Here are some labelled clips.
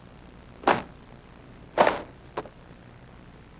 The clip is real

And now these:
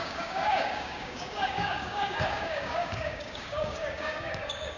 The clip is fake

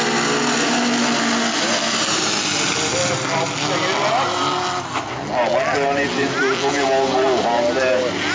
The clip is real